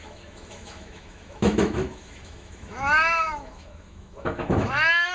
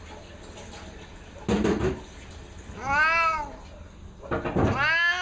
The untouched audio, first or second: second